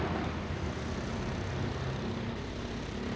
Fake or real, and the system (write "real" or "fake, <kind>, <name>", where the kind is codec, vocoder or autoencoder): real